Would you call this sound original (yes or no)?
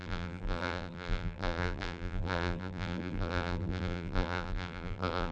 no